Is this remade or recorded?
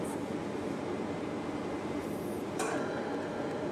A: recorded